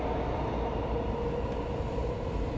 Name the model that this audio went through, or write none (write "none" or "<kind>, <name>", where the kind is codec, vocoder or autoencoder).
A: none